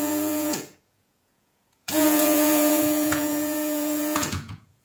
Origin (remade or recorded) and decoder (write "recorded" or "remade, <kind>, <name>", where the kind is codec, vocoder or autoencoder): remade, vocoder, Vocos